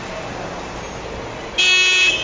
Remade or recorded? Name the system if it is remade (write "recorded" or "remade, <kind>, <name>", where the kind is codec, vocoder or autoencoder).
recorded